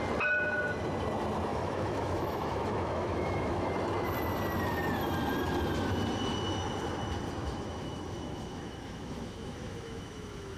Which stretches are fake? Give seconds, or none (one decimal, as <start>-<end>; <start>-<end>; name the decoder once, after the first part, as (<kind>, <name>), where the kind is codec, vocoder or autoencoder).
1.5-3.7 (autoencoder, DAC-VAE); 7.4-10.6